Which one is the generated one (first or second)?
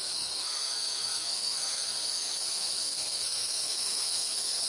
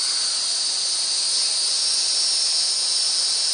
first